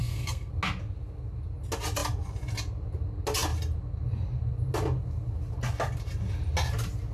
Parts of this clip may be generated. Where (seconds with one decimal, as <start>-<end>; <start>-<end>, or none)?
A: 0.0-0.5